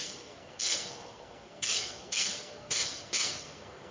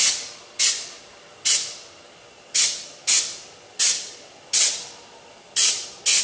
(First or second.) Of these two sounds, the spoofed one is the first